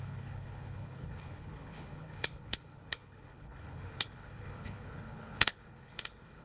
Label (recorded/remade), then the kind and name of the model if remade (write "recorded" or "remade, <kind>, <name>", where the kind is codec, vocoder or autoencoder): remade, codec, HILCodec